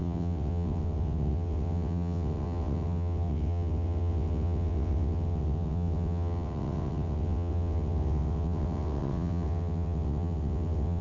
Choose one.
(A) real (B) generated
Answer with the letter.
B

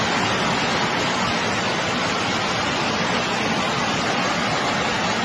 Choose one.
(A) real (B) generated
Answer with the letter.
A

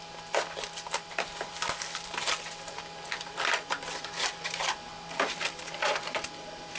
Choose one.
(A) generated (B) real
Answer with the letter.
A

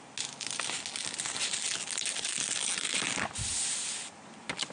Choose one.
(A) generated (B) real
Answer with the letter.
B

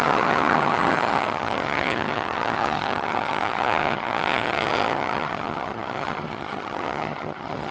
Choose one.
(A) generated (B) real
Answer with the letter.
A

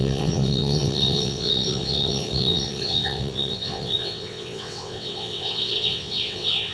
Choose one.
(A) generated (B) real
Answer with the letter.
A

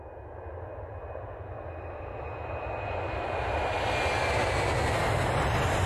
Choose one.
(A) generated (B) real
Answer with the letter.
B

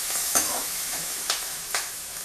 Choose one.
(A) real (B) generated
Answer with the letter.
B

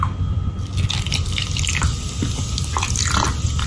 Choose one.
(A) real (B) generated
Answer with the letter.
A